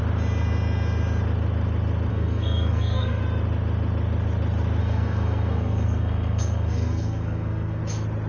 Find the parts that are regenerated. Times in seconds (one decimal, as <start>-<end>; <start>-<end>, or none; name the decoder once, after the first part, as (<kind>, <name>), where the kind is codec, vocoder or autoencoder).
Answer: 2.1-3.2 (codec, SNAC); 4.8-7.8